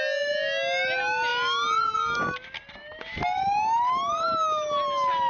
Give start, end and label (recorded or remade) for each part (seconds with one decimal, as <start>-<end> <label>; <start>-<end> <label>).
0.0-5.3 recorded